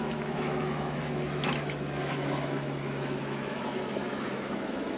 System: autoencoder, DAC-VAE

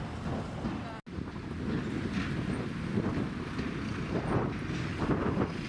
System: none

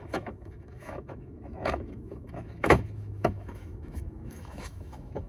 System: autoencoder, DAC-VAE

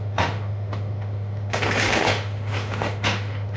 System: autoencoder, DAC-VAE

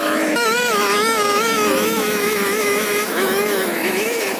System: autoencoder, DAC-VAE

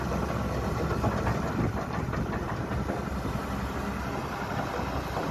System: none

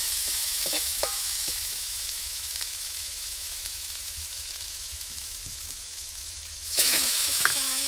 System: autoencoder, DAC-VAE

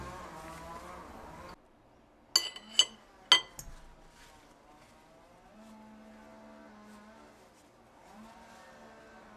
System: none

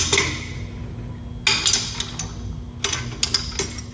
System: none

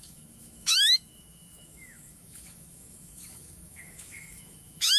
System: autoencoder, DAC-VAE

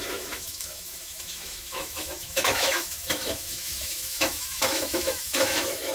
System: autoencoder, DAC-VAE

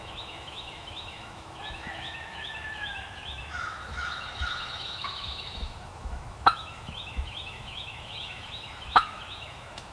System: autoencoder, DAC-VAE